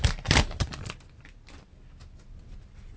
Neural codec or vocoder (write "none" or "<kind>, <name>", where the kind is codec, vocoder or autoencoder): none